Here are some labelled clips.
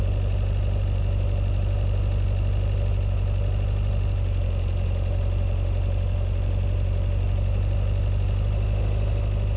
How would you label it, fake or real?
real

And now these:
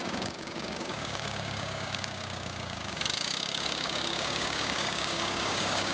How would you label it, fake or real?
fake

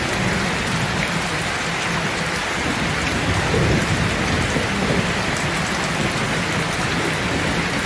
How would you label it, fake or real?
real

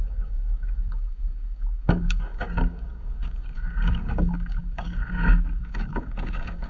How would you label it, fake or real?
fake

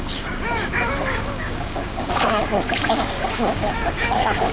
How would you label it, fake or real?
fake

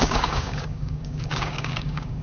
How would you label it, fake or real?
fake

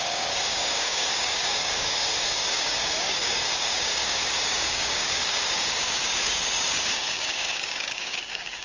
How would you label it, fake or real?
fake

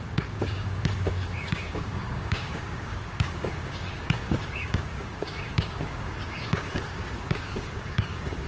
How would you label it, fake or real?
fake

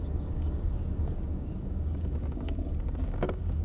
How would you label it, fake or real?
fake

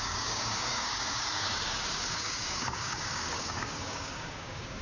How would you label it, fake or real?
fake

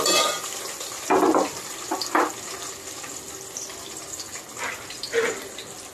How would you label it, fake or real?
real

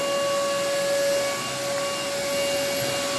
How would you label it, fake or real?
real